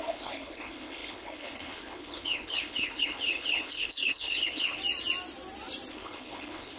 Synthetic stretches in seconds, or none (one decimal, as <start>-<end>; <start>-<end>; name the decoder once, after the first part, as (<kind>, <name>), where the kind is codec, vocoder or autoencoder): 0.0-4.8 (codec, HILCodec); 5.9-6.8